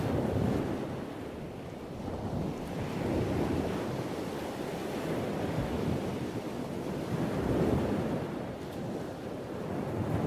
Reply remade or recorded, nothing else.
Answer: recorded